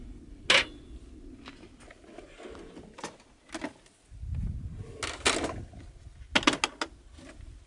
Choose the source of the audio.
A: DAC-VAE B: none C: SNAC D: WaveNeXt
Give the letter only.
B